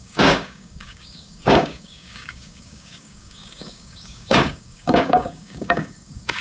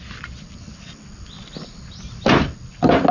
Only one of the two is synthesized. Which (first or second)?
first